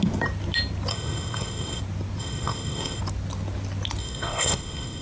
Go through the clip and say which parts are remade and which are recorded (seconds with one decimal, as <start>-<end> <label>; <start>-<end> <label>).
0.0-0.9 recorded; 0.9-1.8 remade; 1.8-2.2 recorded; 2.2-3.0 remade; 3.0-4.0 recorded; 4.0-5.0 remade